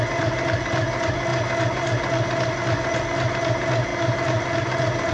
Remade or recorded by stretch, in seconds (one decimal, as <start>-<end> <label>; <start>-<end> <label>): 0.0-5.1 recorded

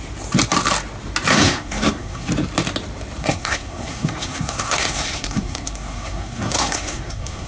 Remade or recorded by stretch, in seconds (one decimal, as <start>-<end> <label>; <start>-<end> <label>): 0.0-1.3 recorded; 1.3-2.3 remade; 2.3-3.2 recorded; 3.2-7.5 remade

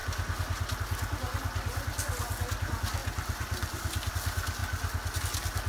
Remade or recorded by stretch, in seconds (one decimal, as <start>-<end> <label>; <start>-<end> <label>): 0.0-3.0 recorded; 3.0-4.1 remade; 4.1-5.7 recorded